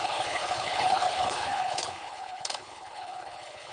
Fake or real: fake